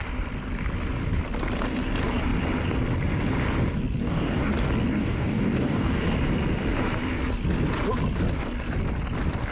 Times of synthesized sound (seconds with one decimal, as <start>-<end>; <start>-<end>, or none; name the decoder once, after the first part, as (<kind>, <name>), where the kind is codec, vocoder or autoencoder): 4.0-4.5 (codec, DAC); 4.9-6.0